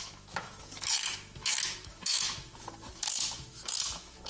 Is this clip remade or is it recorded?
remade